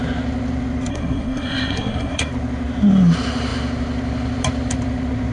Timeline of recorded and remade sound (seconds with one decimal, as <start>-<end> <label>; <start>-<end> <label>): 0.0-0.9 recorded; 0.9-2.3 remade; 2.3-5.3 recorded